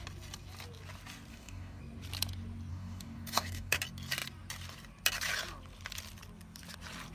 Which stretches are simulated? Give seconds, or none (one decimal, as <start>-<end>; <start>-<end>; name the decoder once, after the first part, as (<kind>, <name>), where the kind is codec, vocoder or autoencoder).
1.3-1.8 (codec, DAC); 2.7-3.8